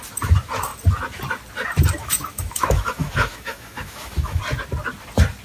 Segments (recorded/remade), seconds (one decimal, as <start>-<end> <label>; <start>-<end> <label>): 0.0-2.0 recorded; 2.0-4.4 remade; 4.4-5.4 recorded

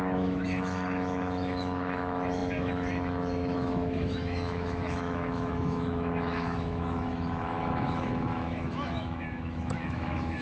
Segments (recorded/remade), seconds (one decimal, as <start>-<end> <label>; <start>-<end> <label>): 0.0-10.4 remade